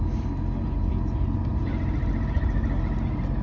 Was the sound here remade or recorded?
recorded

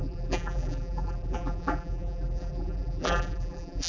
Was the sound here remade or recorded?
remade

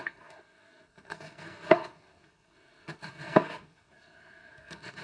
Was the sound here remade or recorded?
remade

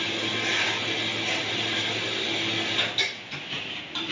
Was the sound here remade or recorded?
recorded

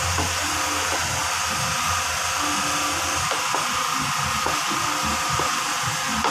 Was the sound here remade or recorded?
recorded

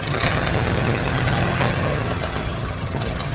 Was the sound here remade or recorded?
remade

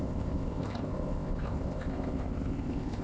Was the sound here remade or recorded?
remade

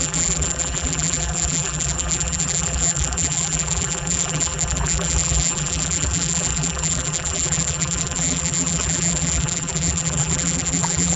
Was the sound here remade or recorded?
remade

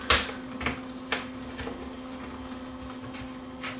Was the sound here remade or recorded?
recorded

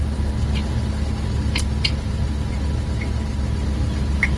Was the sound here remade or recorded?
recorded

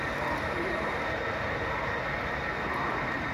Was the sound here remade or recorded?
recorded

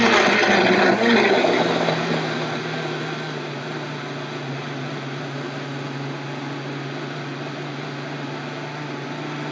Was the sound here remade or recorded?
recorded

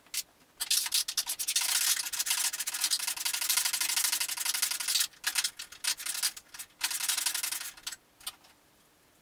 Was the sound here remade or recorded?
recorded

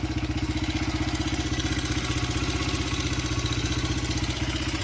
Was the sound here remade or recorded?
recorded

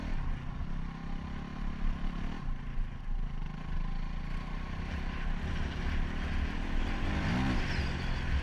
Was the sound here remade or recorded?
recorded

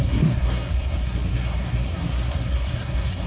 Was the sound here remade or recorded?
remade